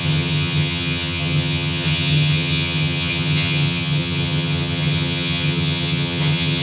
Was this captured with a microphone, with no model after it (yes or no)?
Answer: no